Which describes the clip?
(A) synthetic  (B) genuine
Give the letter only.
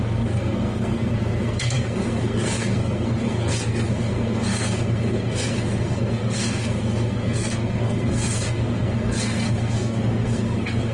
A